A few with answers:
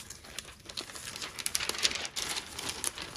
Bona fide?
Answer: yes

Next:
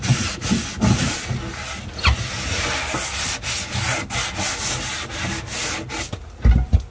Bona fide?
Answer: yes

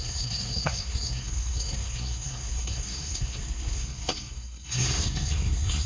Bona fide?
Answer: no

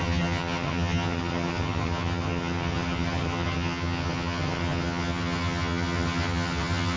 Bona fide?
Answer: no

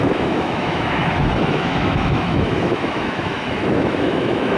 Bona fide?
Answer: no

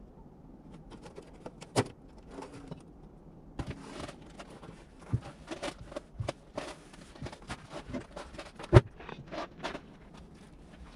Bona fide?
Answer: yes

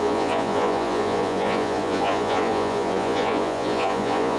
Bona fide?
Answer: no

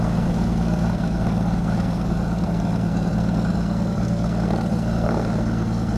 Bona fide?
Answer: no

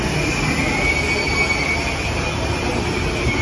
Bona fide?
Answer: yes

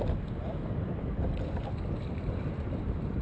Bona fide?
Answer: yes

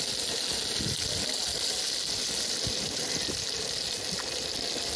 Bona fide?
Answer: yes